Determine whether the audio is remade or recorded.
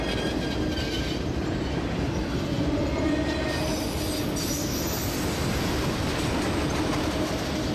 recorded